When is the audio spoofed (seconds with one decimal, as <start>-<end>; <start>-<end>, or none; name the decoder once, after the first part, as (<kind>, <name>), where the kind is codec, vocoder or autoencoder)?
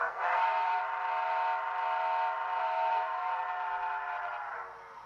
0.0-0.8 (codec, SNAC); 2.6-3.3